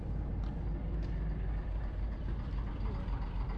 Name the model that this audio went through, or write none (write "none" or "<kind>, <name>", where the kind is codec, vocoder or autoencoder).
none